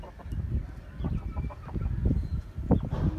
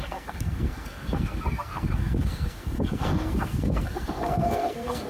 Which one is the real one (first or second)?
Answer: first